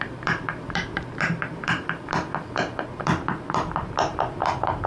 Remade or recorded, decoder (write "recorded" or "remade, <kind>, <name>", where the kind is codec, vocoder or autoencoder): remade, vocoder, BigVGAN v2